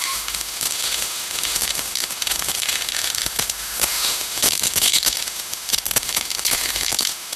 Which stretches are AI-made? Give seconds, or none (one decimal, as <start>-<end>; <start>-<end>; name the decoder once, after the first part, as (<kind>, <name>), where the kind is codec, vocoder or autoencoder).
0.0-7.4 (autoencoder, DAC-VAE)